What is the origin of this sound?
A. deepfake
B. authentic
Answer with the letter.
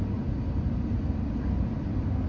B